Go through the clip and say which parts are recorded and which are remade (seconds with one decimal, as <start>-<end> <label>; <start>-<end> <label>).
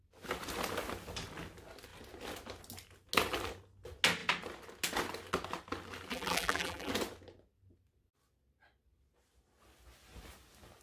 0.0-6.1 recorded; 6.1-6.9 remade; 6.9-10.8 recorded